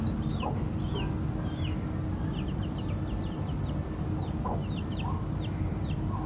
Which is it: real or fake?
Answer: real